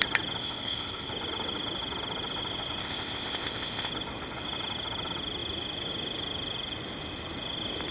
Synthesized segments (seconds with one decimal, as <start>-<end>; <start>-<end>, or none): 0.4-1.1; 2.8-3.9